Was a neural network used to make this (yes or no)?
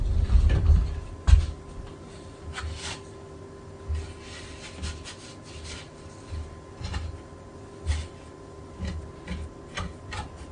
no